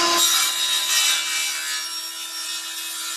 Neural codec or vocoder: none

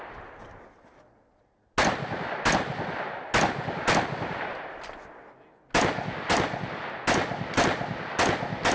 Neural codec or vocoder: none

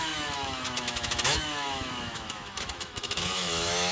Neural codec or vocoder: autoencoder, DAC-VAE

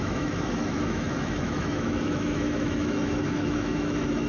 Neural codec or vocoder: autoencoder, DAC-VAE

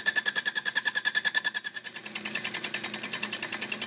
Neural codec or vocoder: none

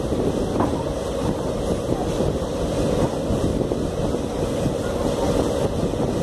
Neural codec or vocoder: none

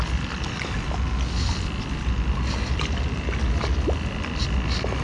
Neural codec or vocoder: none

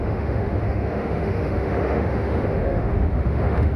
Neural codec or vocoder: autoencoder, DAC-VAE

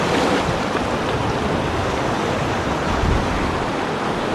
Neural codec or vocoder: none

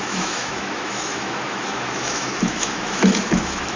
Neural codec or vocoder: autoencoder, DAC-VAE